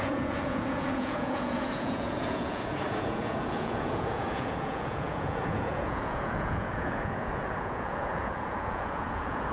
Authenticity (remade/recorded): remade